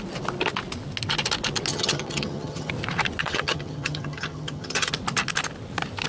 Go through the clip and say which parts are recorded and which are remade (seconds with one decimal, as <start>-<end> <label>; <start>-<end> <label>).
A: 0.0-1.7 recorded; 1.7-2.7 remade; 2.7-3.2 recorded; 3.2-4.9 remade; 4.9-6.1 recorded